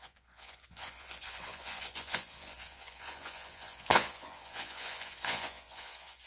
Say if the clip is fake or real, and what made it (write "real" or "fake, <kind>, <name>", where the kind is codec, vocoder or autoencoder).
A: fake, vocoder, Vocos